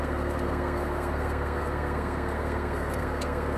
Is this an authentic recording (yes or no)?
no